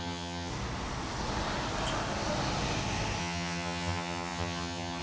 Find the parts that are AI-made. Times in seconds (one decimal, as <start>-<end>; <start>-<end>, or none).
0.0-0.5; 3.2-5.0

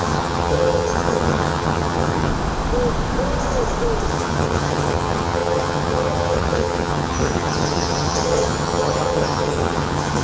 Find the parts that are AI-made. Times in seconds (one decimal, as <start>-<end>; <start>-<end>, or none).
0.0-2.3; 4.1-10.2

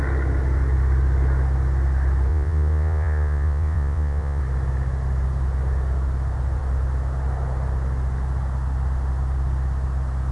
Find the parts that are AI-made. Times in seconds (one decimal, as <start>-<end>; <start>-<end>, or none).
2.3-4.4

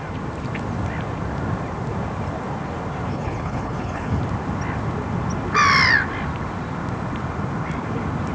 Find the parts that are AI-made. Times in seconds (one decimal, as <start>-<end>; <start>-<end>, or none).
3.1-4.2

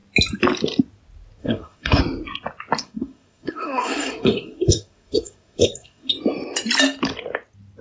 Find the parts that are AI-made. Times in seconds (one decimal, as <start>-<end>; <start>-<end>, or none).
1.4-2.0; 2.8-6.1

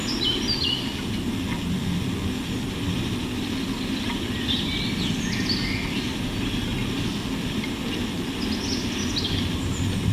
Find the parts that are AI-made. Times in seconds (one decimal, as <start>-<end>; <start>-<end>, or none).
none

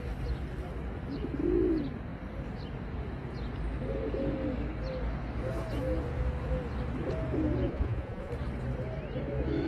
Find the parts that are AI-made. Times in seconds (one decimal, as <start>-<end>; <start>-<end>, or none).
7.7-8.3

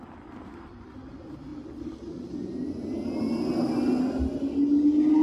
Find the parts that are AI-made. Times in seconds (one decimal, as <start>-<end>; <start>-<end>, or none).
none